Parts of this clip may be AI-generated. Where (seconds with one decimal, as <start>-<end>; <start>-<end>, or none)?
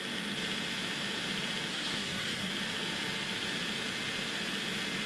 1.7-2.5